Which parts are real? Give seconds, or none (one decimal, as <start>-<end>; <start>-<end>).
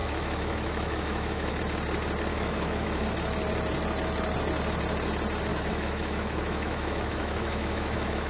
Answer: 1.6-2.3; 3.0-5.5